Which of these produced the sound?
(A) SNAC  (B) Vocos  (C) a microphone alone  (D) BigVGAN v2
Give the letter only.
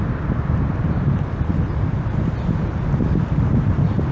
C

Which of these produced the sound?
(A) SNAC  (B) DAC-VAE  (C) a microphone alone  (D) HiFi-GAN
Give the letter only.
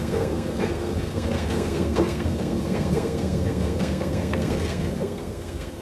A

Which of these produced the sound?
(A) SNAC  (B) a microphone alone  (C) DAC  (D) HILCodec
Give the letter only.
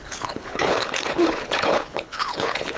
D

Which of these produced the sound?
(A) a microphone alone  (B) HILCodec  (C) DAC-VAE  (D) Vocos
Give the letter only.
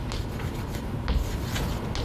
A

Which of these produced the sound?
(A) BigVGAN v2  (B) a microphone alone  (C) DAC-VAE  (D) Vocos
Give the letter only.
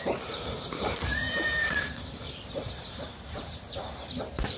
A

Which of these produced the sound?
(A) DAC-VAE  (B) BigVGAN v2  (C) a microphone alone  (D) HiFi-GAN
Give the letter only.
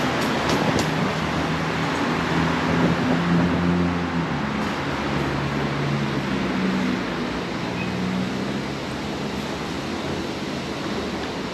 C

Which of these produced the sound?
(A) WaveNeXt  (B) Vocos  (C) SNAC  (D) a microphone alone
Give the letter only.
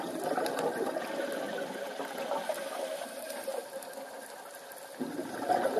D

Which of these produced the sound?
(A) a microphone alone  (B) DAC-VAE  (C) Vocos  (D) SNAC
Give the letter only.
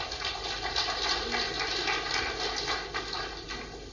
A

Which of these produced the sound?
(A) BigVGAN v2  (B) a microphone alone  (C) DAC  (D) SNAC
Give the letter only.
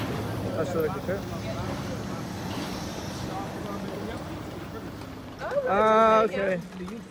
B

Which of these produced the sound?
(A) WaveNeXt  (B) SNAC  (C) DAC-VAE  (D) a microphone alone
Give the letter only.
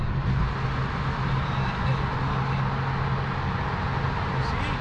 D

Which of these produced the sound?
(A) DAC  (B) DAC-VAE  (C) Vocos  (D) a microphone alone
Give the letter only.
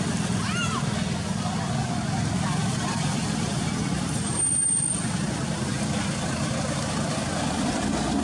D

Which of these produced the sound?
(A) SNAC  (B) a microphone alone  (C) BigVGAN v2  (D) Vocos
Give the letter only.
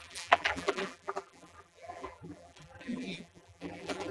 C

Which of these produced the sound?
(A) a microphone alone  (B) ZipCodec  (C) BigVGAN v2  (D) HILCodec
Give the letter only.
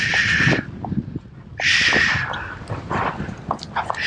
A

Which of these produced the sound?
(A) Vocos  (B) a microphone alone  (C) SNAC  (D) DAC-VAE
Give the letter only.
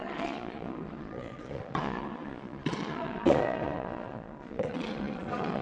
A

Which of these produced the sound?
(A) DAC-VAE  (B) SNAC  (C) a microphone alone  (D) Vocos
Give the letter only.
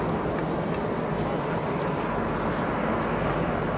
C